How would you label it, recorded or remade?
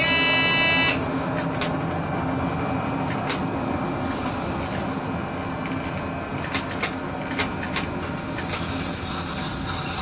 recorded